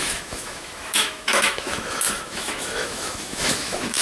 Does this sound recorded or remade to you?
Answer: remade